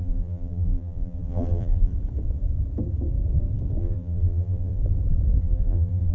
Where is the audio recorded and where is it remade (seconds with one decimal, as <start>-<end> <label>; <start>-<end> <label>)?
0.0-1.9 remade; 1.9-3.8 recorded; 3.8-4.8 remade; 4.8-5.4 recorded; 5.4-6.1 remade